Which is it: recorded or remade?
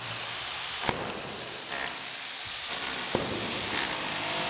recorded